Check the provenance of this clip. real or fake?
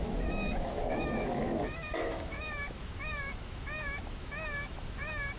fake